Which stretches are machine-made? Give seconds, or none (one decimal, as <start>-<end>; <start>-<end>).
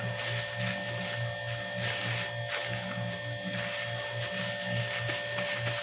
none